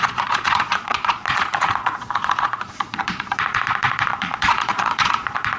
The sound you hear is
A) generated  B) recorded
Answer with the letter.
A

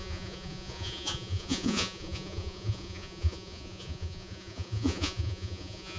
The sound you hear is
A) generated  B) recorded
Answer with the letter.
A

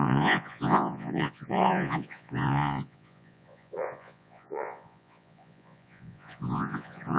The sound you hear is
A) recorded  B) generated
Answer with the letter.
B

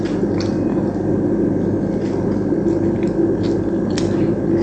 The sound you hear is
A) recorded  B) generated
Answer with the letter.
A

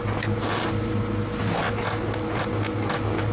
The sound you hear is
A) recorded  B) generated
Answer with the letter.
A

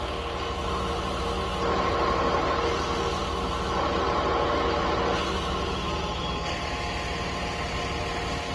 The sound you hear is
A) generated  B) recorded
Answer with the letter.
B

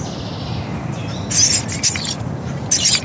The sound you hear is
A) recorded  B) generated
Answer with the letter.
A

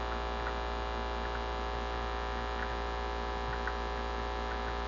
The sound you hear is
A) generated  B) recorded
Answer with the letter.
B